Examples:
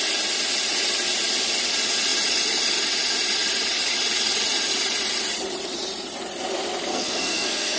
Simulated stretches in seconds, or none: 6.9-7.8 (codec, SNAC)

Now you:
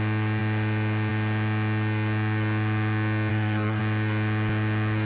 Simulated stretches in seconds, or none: 3.3-3.8 (codec, SNAC)

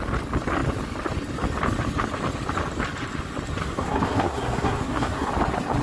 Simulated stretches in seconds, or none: 3.6-5.3 (codec, SNAC)

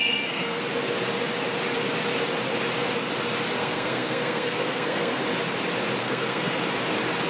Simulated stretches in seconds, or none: 0.0-0.6 (codec, SNAC); 3.6-5.2; 6.0-6.5